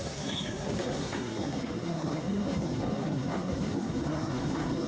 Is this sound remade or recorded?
remade